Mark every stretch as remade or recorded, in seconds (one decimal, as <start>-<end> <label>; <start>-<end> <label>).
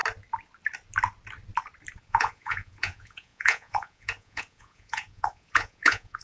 0.0-2.0 recorded; 2.0-6.2 remade